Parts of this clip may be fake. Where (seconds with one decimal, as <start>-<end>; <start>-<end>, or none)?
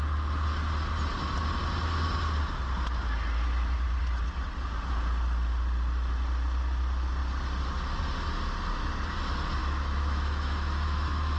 9.6-11.4